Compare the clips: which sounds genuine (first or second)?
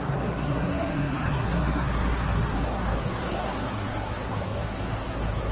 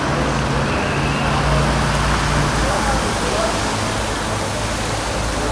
second